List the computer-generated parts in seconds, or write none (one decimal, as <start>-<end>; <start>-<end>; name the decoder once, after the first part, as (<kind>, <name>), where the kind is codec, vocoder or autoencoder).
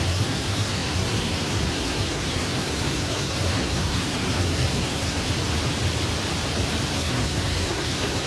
0.0-5.3 (codec, SNAC); 6.9-8.3